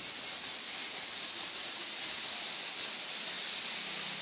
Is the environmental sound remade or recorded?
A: recorded